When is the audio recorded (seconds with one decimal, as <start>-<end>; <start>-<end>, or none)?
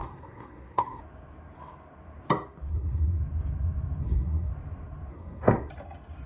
1.0-2.7; 3.2-4.0; 4.5-5.1; 5.7-6.3